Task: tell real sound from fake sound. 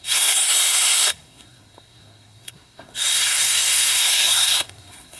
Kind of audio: fake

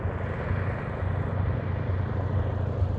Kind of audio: real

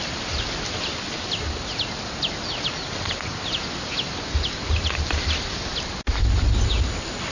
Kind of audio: real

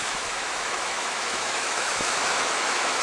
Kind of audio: fake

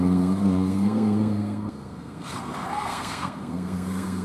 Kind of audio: fake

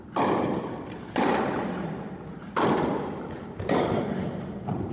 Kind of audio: real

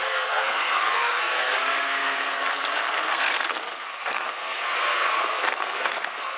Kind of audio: fake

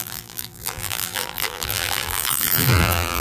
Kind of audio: fake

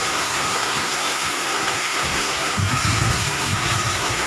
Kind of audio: fake